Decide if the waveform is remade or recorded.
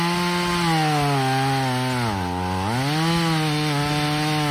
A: recorded